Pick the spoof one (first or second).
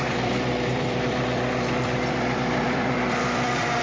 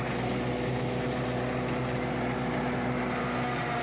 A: first